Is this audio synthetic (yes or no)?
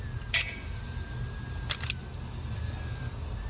no